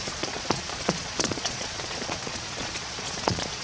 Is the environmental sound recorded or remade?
remade